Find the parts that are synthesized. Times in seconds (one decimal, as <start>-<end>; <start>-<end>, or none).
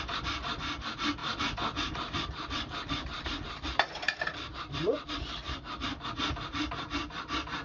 1.2-5.1